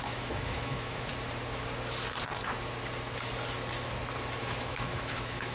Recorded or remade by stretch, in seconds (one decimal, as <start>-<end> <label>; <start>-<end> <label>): 0.0-1.1 remade; 1.1-4.4 recorded; 4.4-5.5 remade